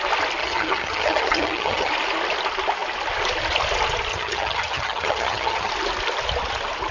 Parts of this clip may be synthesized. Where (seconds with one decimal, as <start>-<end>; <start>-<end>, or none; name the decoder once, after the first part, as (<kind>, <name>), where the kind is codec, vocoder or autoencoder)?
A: 0.4-1.9 (vocoder, HiFi-GAN); 4.1-5.7